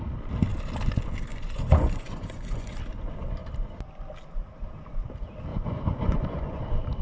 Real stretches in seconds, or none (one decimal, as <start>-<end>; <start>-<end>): 0.0-1.3; 2.8-5.5; 6.6-7.0